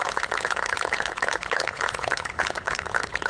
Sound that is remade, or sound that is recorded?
remade